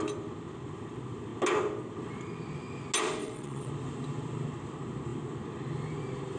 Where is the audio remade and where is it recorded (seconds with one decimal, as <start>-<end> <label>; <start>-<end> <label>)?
0.0-3.2 recorded; 3.2-3.7 remade; 3.7-6.4 recorded